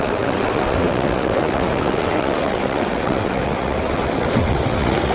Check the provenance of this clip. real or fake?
fake